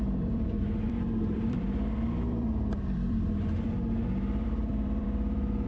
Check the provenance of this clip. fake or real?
fake